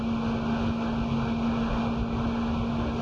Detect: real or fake real